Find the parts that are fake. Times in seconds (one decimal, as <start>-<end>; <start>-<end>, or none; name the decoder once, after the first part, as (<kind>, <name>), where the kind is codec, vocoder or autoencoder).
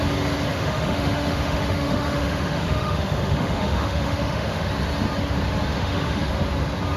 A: 0.5-4.7 (autoencoder, DAC-VAE); 5.7-6.3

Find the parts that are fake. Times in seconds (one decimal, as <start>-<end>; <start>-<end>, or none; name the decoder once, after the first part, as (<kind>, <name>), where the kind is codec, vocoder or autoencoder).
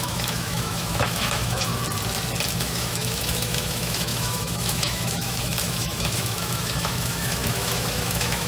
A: 0.0-1.7 (autoencoder, DAC-VAE); 2.6-8.5